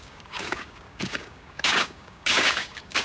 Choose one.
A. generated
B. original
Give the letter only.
A